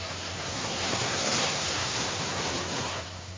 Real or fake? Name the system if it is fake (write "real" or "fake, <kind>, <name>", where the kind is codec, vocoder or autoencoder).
fake, codec, SNAC